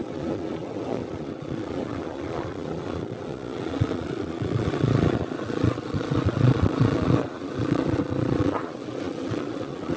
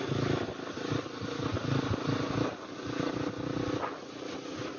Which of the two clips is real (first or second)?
second